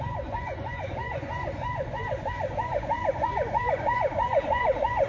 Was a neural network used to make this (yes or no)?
yes